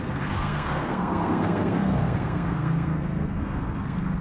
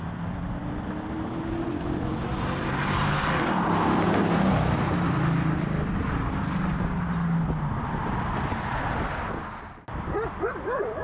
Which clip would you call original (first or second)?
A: second